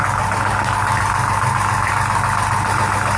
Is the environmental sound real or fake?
real